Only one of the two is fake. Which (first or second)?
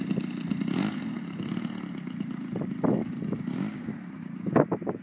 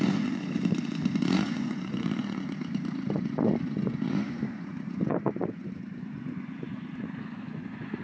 second